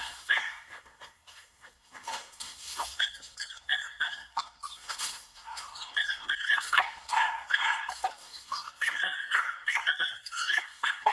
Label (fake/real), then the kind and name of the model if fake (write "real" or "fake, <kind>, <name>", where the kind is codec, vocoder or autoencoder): fake, codec, SNAC